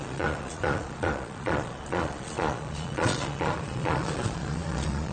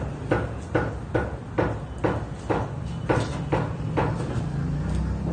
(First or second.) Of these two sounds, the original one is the second